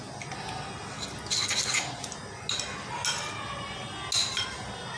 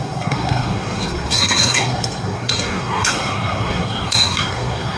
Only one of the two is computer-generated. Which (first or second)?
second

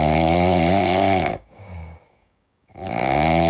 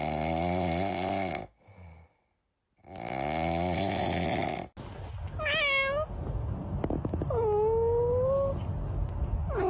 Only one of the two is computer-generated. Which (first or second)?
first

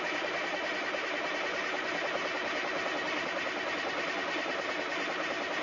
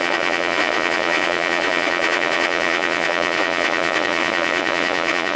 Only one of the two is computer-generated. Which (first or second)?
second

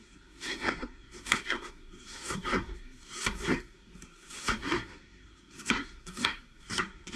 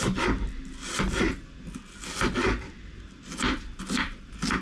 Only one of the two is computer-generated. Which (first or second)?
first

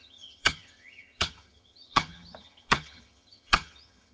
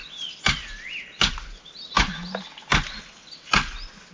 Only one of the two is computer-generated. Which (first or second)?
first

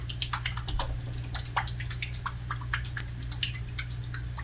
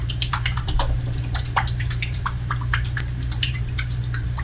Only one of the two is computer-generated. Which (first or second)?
second